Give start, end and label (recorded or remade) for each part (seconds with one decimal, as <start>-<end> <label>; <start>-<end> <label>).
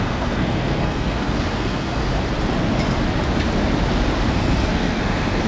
0.0-2.0 remade; 2.0-4.3 recorded; 4.3-5.5 remade